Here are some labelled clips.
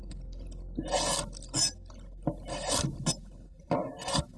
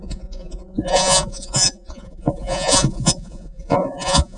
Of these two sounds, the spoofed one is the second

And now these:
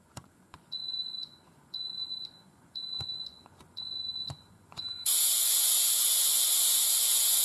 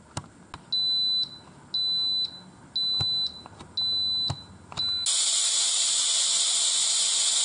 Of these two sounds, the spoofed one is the first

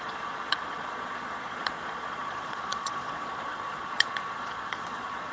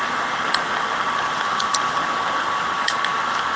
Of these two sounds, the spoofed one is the first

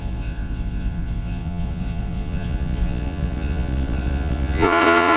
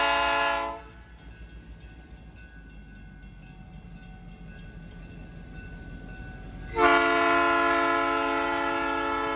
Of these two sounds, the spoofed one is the first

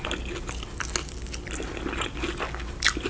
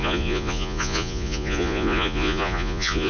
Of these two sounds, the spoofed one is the second